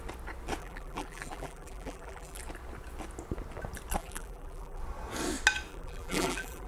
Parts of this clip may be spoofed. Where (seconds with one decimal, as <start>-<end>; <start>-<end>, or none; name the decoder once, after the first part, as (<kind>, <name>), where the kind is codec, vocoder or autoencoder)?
0.6-2.4 (vocoder, BigVGAN v2); 4.0-4.8; 5.7-6.7